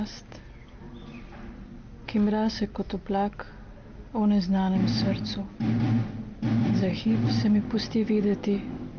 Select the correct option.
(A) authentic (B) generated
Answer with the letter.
A